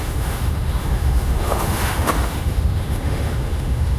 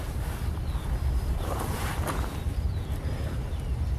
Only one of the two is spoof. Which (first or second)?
first